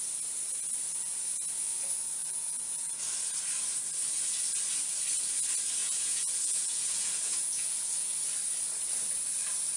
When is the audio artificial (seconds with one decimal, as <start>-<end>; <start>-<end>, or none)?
2.2-2.9; 5.8-8.1